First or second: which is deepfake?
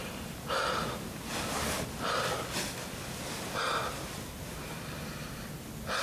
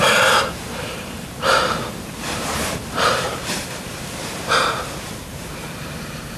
second